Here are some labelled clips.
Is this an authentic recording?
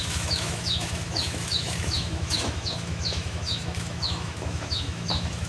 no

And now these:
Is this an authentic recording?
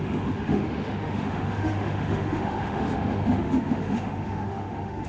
no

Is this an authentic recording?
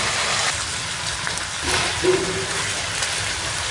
yes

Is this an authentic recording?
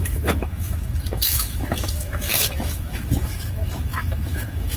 no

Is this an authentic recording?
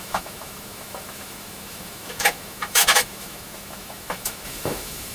no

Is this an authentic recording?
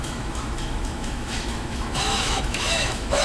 no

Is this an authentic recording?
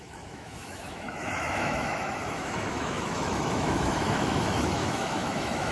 no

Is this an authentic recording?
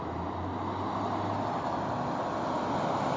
yes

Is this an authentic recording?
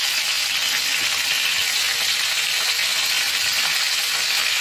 yes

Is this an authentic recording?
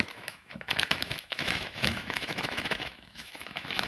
no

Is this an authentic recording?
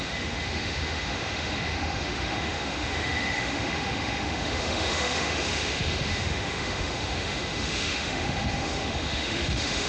no